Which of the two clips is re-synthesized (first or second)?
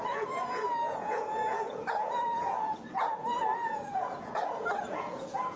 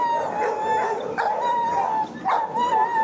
first